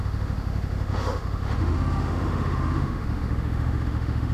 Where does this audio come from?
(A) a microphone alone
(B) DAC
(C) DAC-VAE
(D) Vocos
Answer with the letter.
C